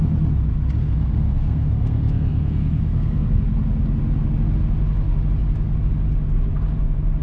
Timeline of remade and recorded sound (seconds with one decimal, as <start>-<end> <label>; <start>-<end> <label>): 0.0-0.8 recorded; 0.8-3.4 remade; 3.4-7.2 recorded